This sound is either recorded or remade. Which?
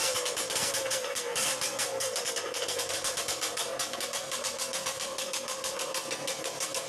remade